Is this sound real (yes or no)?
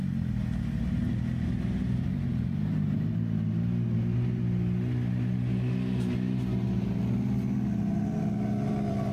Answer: yes